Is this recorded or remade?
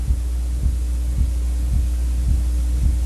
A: recorded